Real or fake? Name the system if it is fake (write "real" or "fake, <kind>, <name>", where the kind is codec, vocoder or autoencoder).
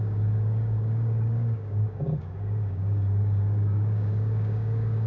fake, codec, DAC